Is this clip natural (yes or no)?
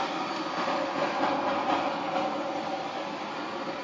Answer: yes